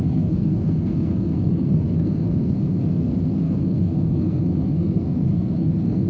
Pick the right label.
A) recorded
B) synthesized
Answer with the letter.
B